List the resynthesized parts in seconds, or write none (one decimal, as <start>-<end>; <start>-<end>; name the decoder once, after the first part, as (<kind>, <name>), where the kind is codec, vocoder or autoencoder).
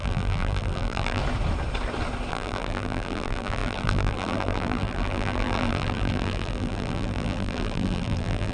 0.0-1.2 (vocoder, BigVGAN v2); 2.3-8.5